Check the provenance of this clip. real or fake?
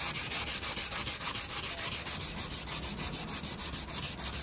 real